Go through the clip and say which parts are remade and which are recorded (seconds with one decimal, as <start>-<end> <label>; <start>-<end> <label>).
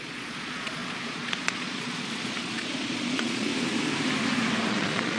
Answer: 0.0-3.5 remade; 3.5-4.7 recorded; 4.7-5.2 remade